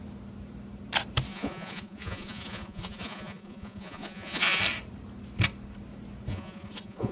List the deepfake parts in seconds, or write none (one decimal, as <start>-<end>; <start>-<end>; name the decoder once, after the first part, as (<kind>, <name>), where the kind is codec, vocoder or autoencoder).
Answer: 1.3-4.6 (vocoder, Vocos); 6.3-7.1